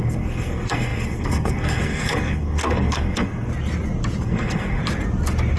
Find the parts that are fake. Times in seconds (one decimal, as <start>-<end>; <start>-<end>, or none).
0.0-3.5; 4.2-4.8